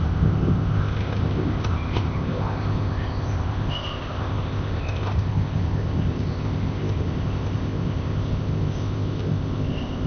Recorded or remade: remade